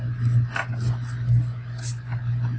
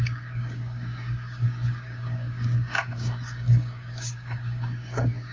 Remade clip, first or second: second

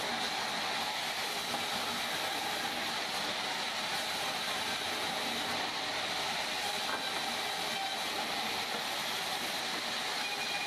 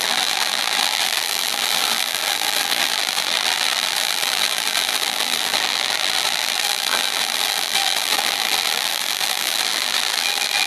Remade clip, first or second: second